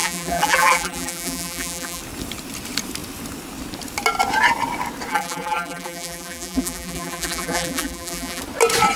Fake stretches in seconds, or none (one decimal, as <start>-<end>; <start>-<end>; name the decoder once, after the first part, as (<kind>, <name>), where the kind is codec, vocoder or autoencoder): 0.0-2.0 (vocoder, BigVGAN v2); 5.1-8.4